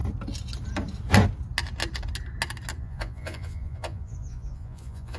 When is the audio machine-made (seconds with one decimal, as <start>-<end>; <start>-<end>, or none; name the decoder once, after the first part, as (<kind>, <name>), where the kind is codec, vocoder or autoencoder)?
2.8-5.2 (vocoder, Vocos)